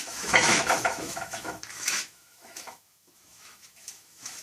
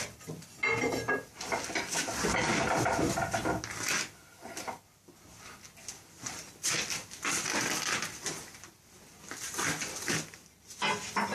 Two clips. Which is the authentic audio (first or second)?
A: second